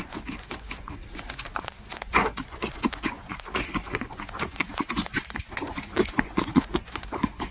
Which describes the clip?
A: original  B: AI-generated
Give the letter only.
B